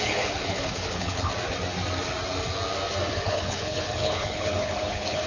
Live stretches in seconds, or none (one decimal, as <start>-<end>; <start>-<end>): 1.3-3.1